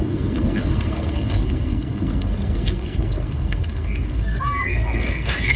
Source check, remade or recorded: remade